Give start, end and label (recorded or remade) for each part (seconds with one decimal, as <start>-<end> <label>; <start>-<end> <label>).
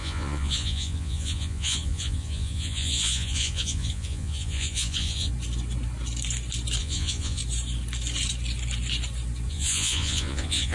0.0-5.3 remade; 5.3-6.8 recorded; 6.8-7.4 remade; 7.4-9.5 recorded; 9.5-10.7 remade